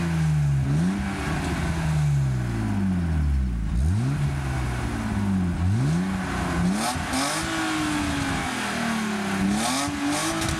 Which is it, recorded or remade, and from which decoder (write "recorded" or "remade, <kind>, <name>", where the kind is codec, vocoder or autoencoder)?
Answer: recorded